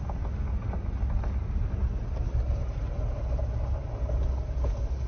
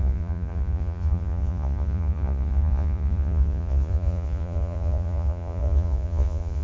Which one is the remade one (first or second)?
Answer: second